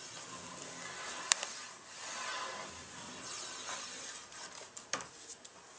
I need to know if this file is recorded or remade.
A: recorded